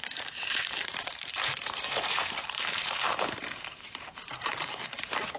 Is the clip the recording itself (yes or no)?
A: no